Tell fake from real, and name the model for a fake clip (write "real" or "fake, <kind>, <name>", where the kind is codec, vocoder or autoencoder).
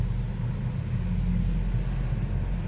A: real